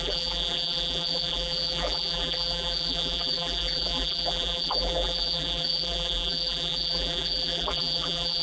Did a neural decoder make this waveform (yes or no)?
yes